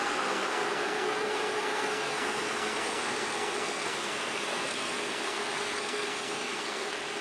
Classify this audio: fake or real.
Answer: fake